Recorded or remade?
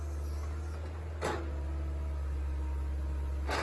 recorded